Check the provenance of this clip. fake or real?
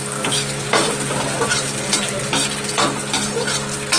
real